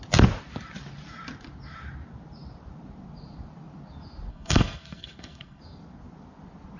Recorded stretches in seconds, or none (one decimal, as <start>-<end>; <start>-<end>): 0.0-4.3; 5.6-6.8